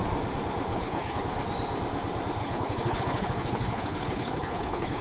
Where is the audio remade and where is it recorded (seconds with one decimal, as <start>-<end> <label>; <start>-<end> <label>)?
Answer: 0.0-0.7 recorded; 0.7-1.2 remade; 1.2-2.4 recorded; 2.4-5.0 remade